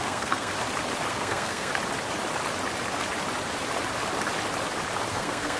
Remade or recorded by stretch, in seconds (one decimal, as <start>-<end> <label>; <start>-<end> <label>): 0.0-0.5 remade; 0.5-1.1 recorded; 1.1-1.7 remade; 1.7-5.1 recorded; 5.1-5.6 remade